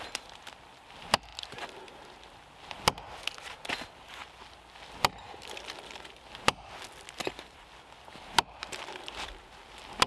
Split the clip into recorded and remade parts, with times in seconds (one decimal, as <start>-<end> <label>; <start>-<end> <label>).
0.0-10.1 recorded

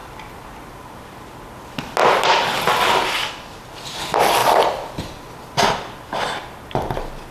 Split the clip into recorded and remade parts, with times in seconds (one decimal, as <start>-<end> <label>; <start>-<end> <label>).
0.0-1.2 remade; 1.2-4.4 recorded; 4.4-7.3 remade

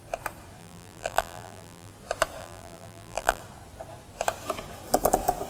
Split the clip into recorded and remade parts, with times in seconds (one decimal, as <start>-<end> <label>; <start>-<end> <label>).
0.0-0.6 recorded; 0.6-1.9 remade; 1.9-2.4 recorded; 2.4-3.4 remade; 3.4-5.5 recorded

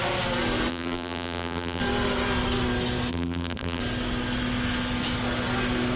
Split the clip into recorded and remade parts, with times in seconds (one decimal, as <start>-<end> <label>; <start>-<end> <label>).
0.0-0.7 recorded; 0.7-1.8 remade; 1.8-3.1 recorded; 3.1-3.8 remade; 3.8-6.0 recorded

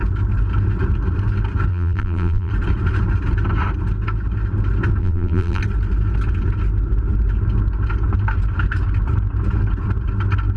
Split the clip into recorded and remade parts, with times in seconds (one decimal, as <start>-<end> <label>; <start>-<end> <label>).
0.0-1.7 recorded; 1.7-2.5 remade; 2.5-5.0 recorded; 5.0-5.6 remade; 5.6-10.6 recorded

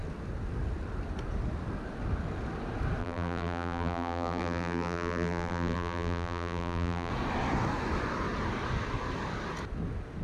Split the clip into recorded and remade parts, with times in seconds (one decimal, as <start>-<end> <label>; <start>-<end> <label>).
0.0-3.0 recorded; 3.0-7.1 remade; 7.1-10.2 recorded